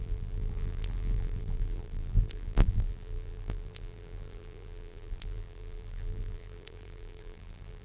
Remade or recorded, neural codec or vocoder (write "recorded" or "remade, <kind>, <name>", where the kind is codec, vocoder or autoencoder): remade, vocoder, BigVGAN v2